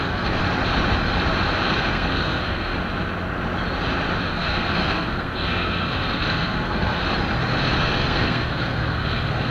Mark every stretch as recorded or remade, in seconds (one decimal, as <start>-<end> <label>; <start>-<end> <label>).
0.0-0.4 remade; 0.4-1.7 recorded; 1.7-2.7 remade; 2.7-4.2 recorded; 4.2-7.0 remade; 7.0-7.8 recorded; 7.8-9.5 remade